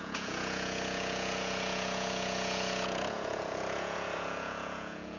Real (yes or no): no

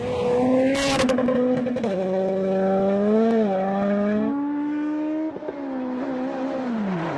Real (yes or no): yes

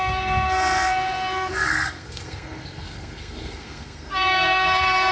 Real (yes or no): no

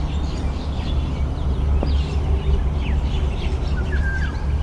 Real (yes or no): yes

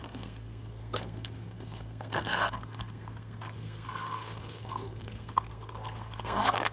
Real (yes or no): no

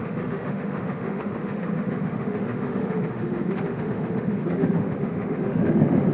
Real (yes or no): no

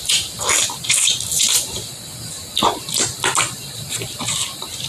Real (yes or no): yes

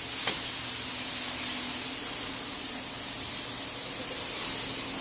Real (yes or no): yes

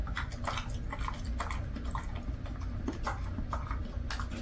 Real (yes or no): yes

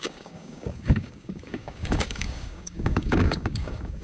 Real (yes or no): no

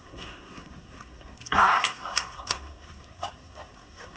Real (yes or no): no